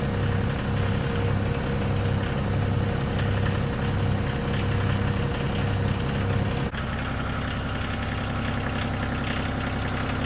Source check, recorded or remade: recorded